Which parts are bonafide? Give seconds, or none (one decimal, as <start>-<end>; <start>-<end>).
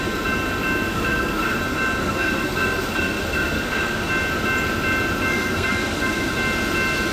0.0-0.9; 1.6-2.0; 4.1-5.3; 6.3-7.1